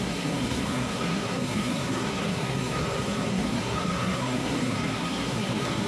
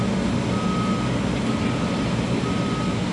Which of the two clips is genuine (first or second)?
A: second